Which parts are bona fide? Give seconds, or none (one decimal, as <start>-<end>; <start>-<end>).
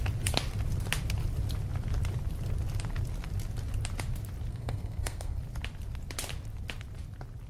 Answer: 0.0-4.5; 5.4-7.5